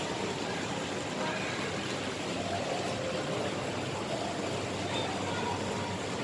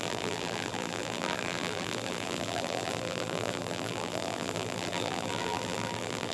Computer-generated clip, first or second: second